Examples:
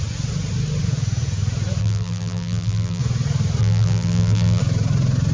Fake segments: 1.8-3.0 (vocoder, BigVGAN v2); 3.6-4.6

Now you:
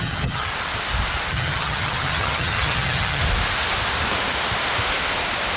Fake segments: 0.0-0.5 (vocoder, HiFi-GAN); 1.3-3.2

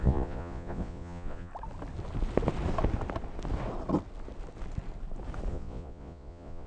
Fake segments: 0.0-1.5 (vocoder, Vocos); 5.5-6.7

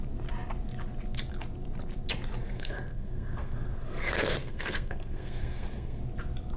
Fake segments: 2.4-6.0 (codec, SNAC)